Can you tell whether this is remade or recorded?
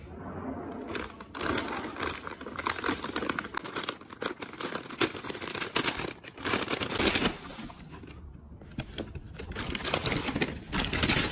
recorded